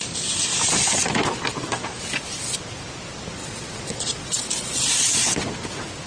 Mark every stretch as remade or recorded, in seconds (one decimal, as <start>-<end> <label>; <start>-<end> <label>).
0.0-3.4 recorded; 3.4-4.9 remade; 4.9-6.1 recorded